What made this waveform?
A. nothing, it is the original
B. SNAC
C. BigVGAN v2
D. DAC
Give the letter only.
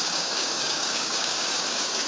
D